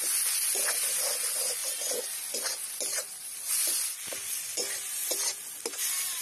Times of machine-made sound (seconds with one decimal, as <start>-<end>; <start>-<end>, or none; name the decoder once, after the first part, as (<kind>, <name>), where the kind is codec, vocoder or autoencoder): none

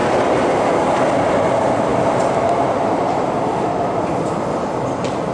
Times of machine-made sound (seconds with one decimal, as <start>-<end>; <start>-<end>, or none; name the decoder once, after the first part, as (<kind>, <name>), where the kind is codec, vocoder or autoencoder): 0.0-0.8 (vocoder, BigVGAN v2); 1.9-4.1

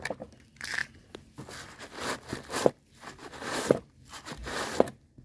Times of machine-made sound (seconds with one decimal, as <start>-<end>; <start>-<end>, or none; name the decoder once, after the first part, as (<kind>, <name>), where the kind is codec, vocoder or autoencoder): 0.0-0.8 (vocoder, BigVGAN v2); 2.7-4.4

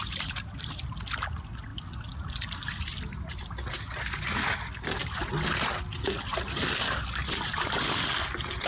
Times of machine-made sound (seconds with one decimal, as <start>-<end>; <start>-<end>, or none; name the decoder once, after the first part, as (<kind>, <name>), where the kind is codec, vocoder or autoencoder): 0.0-0.8 (vocoder, BigVGAN v2); 7.2-7.8

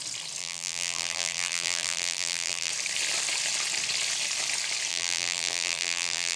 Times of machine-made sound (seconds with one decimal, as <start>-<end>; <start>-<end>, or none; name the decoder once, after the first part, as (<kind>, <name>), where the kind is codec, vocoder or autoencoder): 0.4-2.7 (vocoder, BigVGAN v2); 4.9-6.4